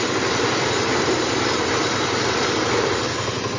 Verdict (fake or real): real